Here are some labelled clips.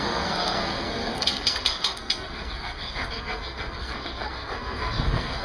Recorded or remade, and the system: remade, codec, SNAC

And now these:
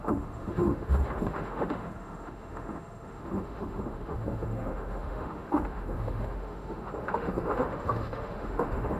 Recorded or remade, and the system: remade, autoencoder, DAC-VAE